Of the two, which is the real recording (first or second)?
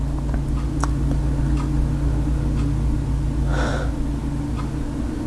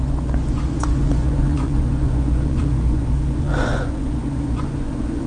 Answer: first